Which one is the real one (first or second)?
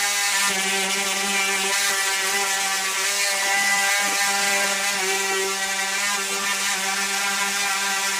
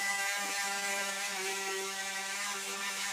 first